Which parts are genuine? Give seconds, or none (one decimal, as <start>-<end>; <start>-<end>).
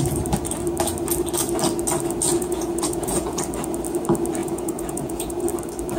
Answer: 0.0-2.3; 3.4-4.4; 5.4-6.0